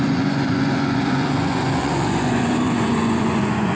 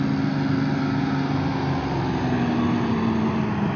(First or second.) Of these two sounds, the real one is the second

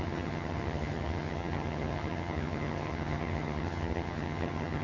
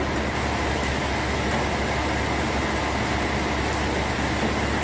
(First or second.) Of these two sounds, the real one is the second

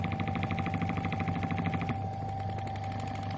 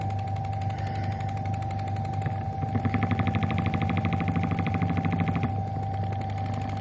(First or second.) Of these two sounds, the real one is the first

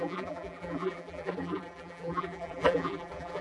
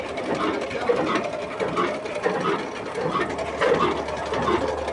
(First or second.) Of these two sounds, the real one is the second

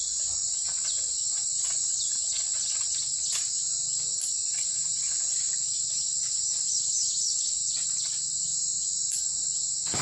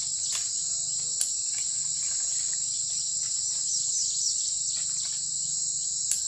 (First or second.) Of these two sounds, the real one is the second